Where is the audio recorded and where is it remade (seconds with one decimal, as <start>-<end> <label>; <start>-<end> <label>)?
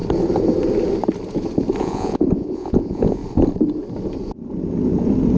0.0-1.8 recorded; 1.8-3.2 remade; 3.2-5.4 recorded